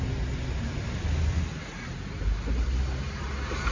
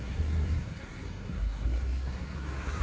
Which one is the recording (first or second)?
first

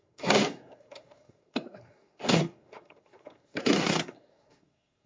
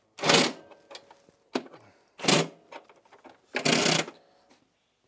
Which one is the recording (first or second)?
second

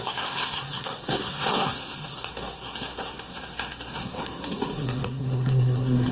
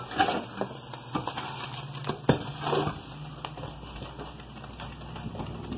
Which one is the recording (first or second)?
second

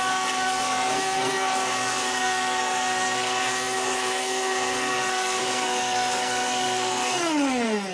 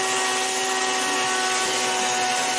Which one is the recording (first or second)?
second